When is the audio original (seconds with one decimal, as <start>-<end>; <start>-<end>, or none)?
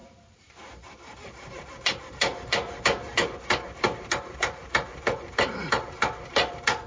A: none